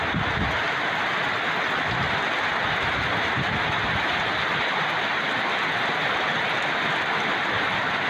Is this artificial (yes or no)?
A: no